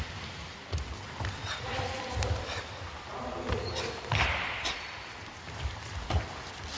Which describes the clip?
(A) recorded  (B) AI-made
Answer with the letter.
A